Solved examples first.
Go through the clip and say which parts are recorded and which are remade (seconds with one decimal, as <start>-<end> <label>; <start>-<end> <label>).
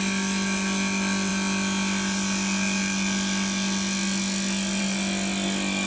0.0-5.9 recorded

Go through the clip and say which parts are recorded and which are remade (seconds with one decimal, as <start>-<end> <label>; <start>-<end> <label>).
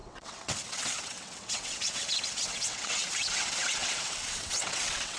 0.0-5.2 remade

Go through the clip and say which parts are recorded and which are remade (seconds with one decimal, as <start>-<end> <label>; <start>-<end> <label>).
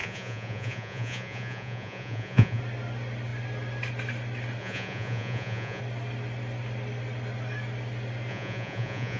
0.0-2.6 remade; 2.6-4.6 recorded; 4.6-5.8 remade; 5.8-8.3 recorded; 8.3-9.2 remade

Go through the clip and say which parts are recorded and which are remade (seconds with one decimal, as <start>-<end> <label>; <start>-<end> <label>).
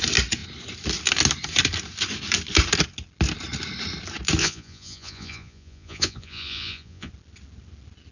0.0-4.4 recorded; 4.4-7.1 remade; 7.1-8.1 recorded